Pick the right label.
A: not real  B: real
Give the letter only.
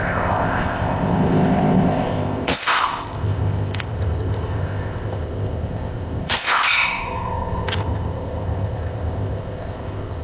A